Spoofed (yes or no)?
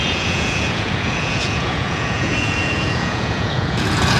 yes